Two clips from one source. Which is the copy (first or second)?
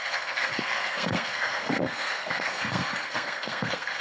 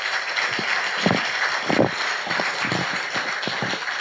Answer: first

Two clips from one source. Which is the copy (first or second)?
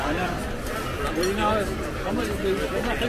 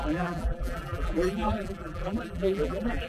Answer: second